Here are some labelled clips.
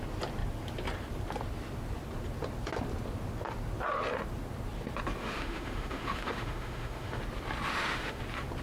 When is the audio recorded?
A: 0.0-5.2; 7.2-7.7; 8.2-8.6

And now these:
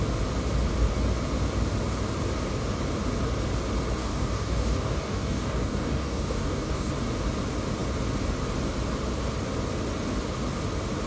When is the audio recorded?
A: 0.0-4.0; 6.9-11.1

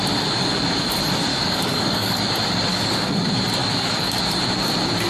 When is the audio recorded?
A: 0.0-1.3; 2.2-2.7; 3.2-3.6; 4.2-5.1

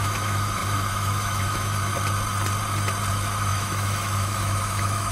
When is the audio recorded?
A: 1.9-3.1

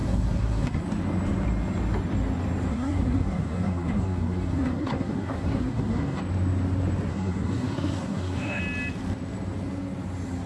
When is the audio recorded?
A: 0.8-2.7; 6.2-7.1; 8.6-10.5

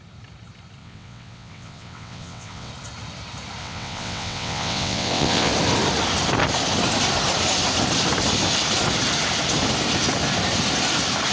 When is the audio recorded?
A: 0.0-0.8; 2.7-3.6; 5.5-11.3